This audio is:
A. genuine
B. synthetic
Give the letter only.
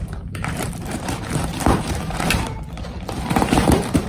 B